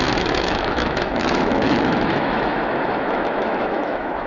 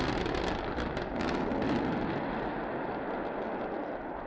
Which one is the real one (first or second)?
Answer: second